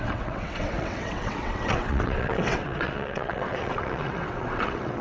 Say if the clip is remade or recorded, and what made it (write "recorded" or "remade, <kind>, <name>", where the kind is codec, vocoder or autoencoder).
remade, vocoder, WaveNeXt